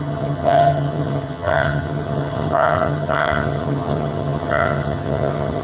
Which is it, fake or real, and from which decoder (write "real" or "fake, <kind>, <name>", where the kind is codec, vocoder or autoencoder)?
fake, vocoder, HiFi-GAN